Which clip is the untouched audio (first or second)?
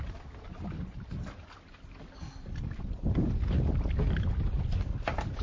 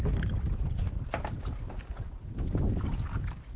first